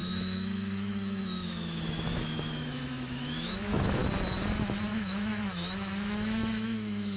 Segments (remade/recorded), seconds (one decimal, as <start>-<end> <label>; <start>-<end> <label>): 0.0-4.0 remade; 4.0-4.9 recorded; 4.9-7.2 remade